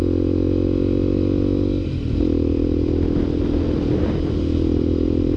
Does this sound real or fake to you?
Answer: real